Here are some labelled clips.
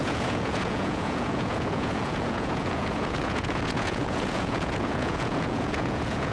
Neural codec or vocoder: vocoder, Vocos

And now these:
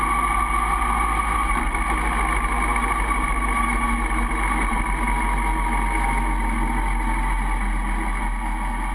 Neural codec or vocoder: none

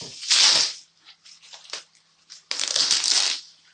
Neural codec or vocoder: none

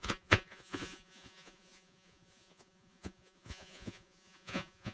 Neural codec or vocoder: vocoder, Vocos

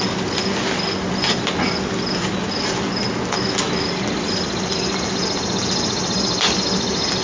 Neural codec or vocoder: none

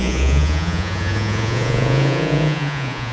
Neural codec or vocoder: vocoder, Vocos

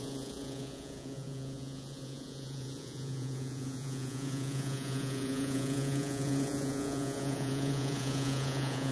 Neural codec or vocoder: vocoder, Vocos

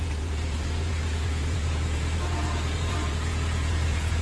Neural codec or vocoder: vocoder, Vocos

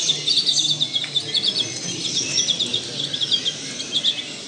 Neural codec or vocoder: none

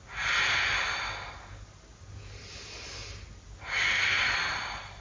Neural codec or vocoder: none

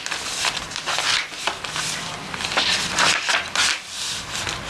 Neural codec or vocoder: none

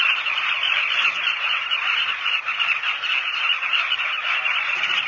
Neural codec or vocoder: none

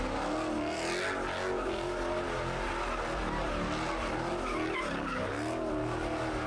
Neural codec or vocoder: none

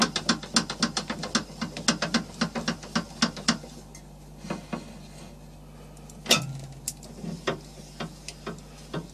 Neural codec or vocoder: none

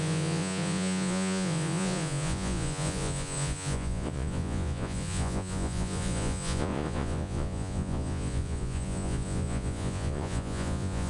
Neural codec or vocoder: vocoder, Vocos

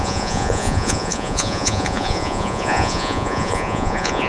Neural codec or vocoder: vocoder, Vocos